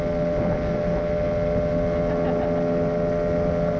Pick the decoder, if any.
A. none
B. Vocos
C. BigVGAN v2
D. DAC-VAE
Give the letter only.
A